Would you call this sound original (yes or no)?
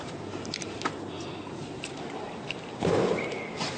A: no